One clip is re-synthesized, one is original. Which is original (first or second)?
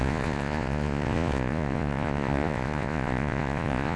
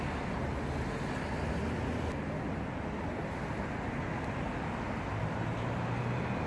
second